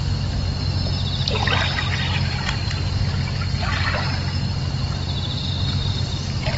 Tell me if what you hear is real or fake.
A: real